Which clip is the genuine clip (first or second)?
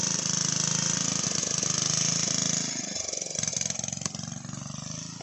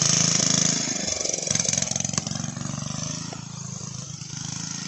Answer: first